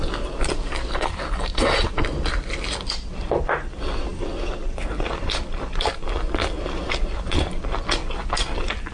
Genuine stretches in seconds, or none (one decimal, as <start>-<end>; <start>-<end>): 0.0-8.9